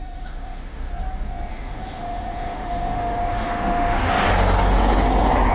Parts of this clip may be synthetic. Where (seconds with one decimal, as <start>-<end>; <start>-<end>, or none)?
0.0-0.9; 1.5-4.1

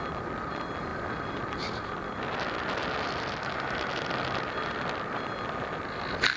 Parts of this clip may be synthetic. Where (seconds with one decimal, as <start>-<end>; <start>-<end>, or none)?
none

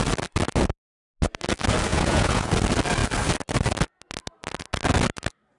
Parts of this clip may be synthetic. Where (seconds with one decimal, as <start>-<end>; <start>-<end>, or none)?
1.9-2.5